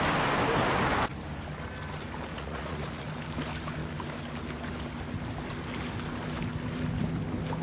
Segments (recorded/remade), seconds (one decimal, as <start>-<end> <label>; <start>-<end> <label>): 0.0-2.3 recorded; 2.3-3.1 remade; 3.1-7.6 recorded